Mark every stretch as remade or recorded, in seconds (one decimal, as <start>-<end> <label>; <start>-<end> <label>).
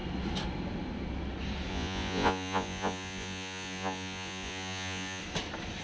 0.0-1.7 recorded; 1.7-5.2 remade; 5.2-5.8 recorded